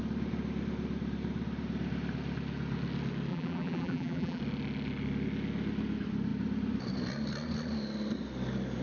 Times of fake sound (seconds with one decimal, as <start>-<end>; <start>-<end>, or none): 3.3-4.4